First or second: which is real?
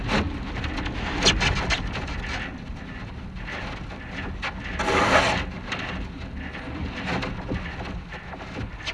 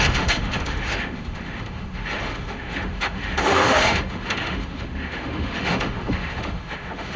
first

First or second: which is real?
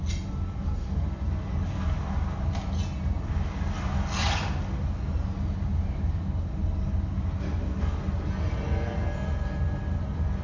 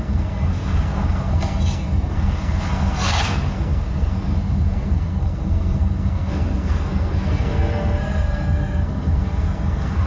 first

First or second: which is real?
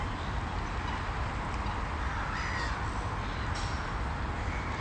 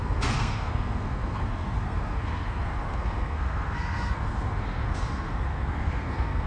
first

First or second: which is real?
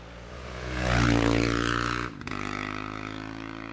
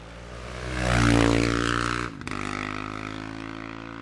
second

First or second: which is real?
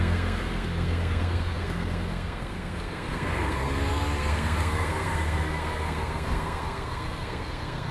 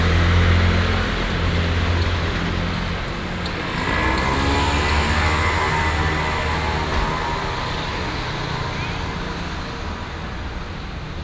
second